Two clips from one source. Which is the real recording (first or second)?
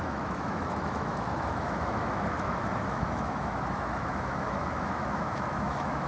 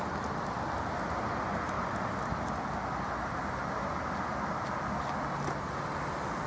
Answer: second